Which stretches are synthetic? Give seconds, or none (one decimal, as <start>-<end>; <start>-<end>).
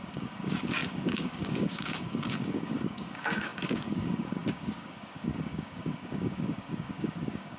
0.0-7.6